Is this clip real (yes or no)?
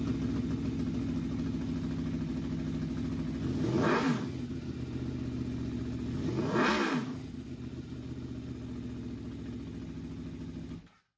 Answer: yes